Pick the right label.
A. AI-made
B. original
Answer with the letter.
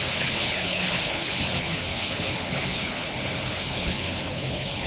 A